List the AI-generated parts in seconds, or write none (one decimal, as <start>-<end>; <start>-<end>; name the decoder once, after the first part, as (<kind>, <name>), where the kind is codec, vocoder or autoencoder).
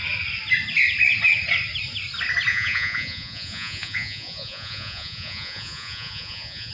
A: 2.5-6.7 (vocoder, Vocos)